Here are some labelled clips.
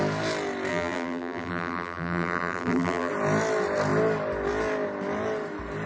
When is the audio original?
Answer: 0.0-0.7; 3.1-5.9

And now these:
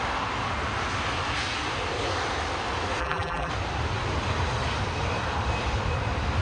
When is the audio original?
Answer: 0.0-3.0; 3.5-6.4

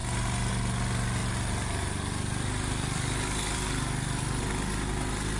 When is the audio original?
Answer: 0.0-1.2; 4.4-5.4

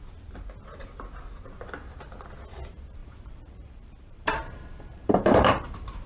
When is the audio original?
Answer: 0.0-3.0

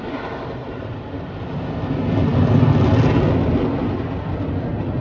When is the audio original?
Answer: 0.0-0.6; 1.3-5.0

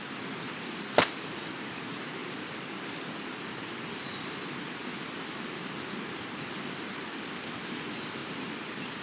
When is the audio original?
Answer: 0.0-8.2

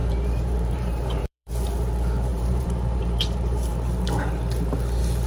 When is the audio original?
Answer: 1.5-2.3; 3.7-5.3